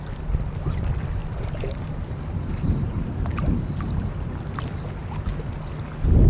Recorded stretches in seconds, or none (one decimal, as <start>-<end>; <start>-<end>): 0.0-1.2; 4.3-6.3